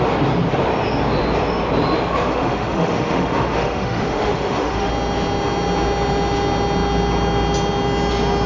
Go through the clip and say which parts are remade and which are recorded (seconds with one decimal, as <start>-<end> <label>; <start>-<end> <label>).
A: 0.0-2.3 recorded; 2.3-4.9 remade; 4.9-8.5 recorded